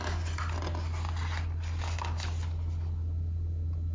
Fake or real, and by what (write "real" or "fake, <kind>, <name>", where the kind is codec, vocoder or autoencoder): real